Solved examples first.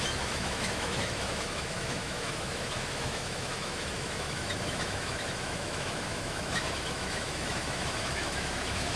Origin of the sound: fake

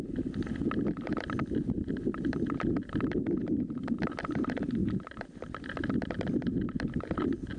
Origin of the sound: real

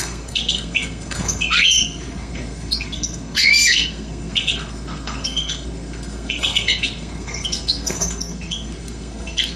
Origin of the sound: fake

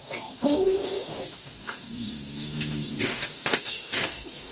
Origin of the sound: fake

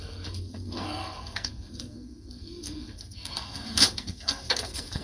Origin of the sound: fake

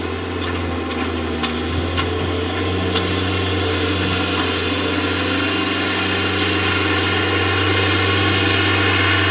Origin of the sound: real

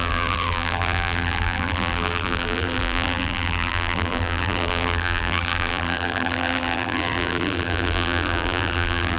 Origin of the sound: fake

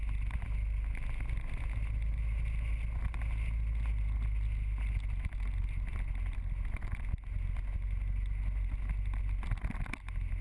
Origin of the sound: real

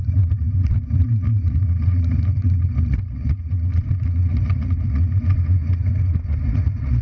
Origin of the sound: fake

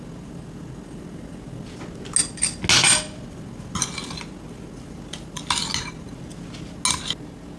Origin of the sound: real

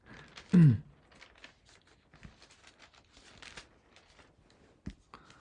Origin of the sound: real